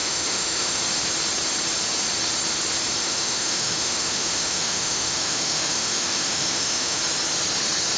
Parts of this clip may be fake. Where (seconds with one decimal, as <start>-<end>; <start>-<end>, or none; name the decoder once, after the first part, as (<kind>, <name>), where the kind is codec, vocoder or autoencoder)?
0.0-0.8 (autoencoder, DAC-VAE); 3.0-7.0